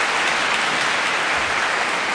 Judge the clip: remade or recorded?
recorded